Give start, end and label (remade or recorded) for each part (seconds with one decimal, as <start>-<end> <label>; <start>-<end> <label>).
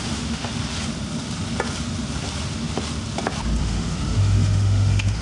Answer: 0.0-0.5 remade; 0.5-3.6 recorded; 3.6-5.2 remade